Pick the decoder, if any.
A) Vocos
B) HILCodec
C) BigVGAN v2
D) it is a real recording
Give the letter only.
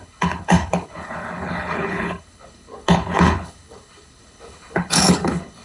B